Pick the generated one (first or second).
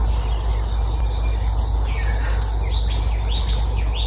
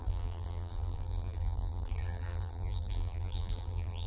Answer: second